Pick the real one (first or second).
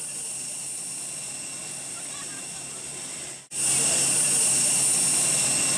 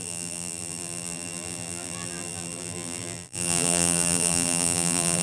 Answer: first